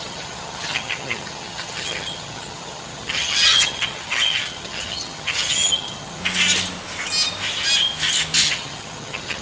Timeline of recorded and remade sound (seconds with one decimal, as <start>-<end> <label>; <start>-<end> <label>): 0.0-6.2 remade; 6.2-8.4 recorded; 8.4-9.4 remade